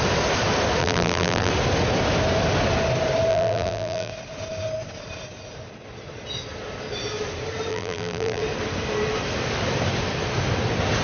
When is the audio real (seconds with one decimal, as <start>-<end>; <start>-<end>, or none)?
0.0-0.8; 1.5-3.3; 4.1-7.7; 8.4-11.0